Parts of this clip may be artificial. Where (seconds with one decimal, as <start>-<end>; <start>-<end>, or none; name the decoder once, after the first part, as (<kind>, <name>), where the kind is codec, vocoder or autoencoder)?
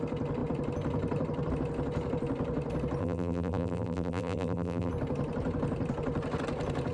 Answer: 3.0-4.9 (vocoder, BigVGAN v2)